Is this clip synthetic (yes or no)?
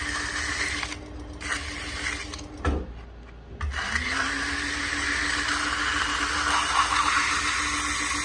no